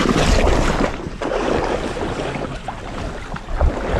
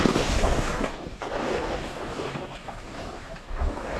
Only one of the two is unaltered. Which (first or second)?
first